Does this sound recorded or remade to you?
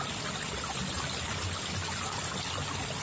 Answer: recorded